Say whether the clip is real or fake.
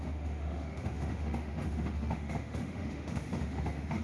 fake